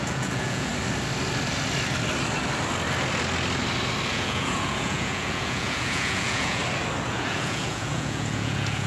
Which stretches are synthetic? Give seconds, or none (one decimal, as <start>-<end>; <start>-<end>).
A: 0.0-0.7; 4.1-6.6; 7.1-8.9